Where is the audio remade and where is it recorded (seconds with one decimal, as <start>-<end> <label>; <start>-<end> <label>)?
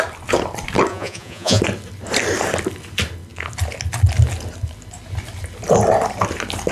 0.0-0.9 recorded; 0.9-1.6 remade; 1.6-6.7 recorded